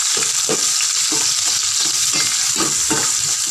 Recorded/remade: recorded